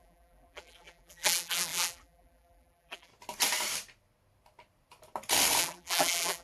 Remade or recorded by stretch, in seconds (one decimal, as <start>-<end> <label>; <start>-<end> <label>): 0.0-3.1 remade; 3.1-5.6 recorded; 5.6-6.4 remade